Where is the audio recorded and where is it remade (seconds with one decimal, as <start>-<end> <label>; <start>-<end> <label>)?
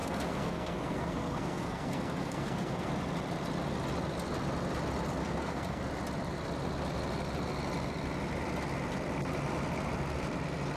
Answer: 0.0-2.9 remade; 2.9-5.2 recorded; 5.2-5.8 remade; 5.8-10.8 recorded